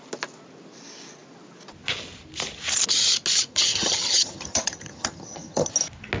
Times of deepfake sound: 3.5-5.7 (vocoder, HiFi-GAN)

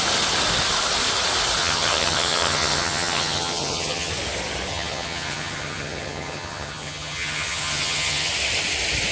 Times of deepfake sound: 1.6-4.1 (vocoder, HiFi-GAN); 4.7-8.3

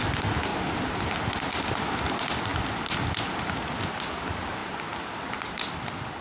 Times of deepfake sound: none

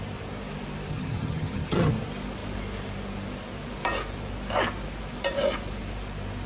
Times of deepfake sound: 0.9-1.9 (vocoder, HiFi-GAN)

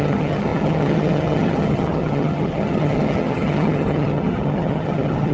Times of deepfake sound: 0.0-5.3 (vocoder, HiFi-GAN)

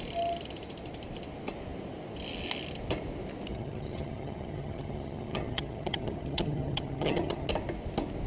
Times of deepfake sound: 3.5-7.5 (vocoder, HiFi-GAN)